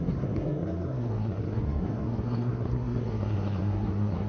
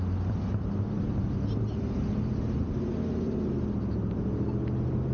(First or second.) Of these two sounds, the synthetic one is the first